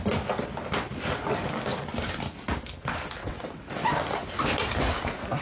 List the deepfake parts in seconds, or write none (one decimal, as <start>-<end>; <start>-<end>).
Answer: 3.2-3.7